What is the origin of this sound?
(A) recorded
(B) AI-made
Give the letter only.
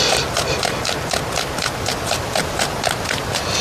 A